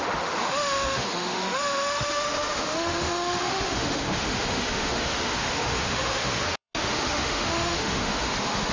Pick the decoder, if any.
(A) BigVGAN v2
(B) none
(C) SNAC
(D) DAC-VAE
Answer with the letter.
D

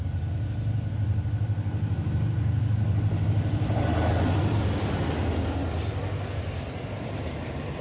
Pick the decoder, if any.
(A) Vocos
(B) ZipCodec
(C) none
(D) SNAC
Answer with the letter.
C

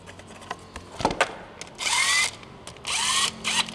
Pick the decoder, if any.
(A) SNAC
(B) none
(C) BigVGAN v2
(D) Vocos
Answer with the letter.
B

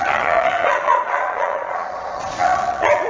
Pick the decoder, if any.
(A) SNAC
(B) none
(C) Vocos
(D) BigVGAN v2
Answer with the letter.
C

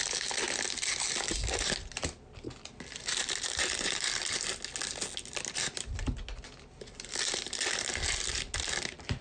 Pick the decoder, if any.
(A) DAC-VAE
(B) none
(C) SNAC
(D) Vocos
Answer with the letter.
B